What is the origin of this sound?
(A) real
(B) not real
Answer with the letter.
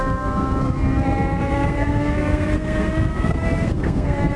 B